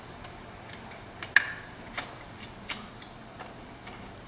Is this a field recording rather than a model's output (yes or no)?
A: yes